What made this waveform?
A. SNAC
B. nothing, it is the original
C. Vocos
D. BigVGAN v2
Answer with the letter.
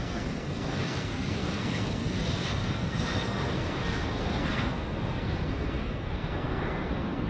A